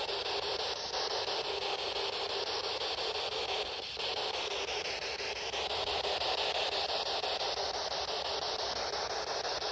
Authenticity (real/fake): real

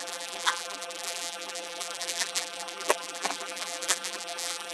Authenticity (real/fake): fake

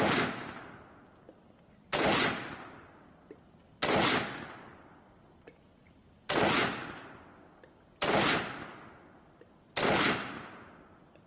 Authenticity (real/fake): real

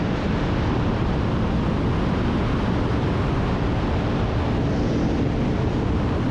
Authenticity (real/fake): real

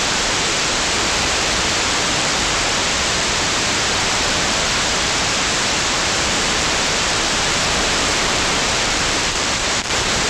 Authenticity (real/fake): fake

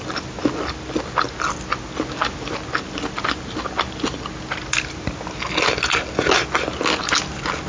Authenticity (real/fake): real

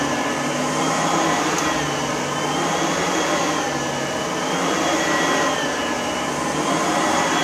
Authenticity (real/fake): fake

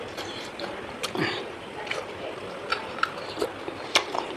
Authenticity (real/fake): fake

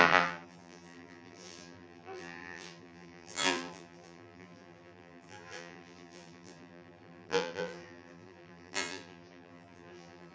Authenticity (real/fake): fake